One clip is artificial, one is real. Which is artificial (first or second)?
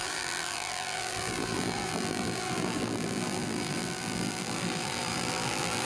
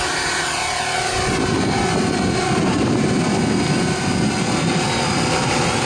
first